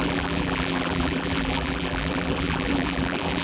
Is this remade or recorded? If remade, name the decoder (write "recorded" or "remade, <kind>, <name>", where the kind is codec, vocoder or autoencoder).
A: remade, vocoder, BigVGAN v2